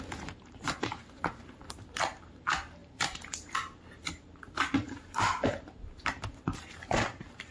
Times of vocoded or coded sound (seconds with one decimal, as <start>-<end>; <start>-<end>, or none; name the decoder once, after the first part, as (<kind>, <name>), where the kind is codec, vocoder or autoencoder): 0.0-7.5 (vocoder, BigVGAN v2)